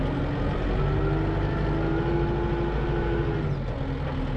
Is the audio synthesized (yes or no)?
no